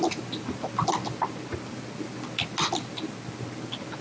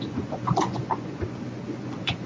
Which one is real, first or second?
first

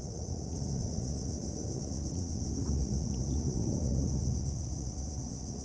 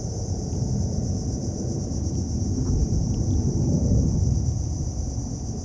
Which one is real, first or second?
second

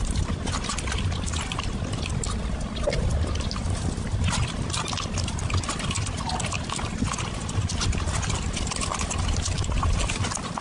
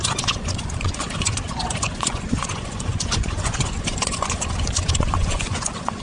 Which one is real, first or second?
first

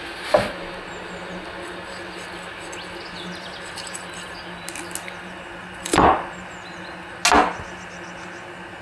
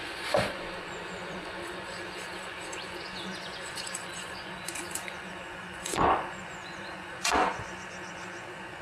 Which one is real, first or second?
first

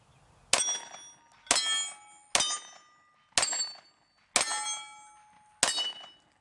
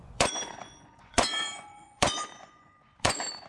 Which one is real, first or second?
first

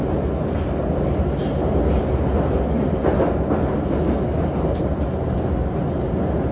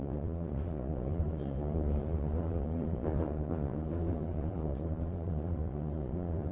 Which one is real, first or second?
first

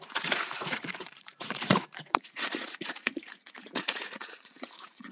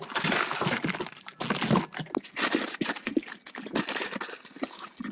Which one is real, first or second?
second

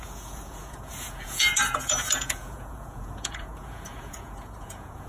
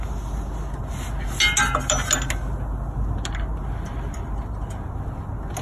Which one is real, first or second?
second